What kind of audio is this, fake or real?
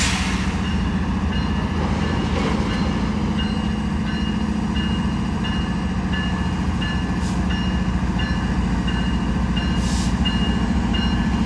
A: real